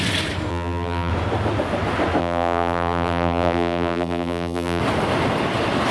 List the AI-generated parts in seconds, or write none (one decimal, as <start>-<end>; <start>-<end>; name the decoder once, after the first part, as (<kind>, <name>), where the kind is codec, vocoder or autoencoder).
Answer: 0.5-1.1 (vocoder, BigVGAN v2); 2.2-4.8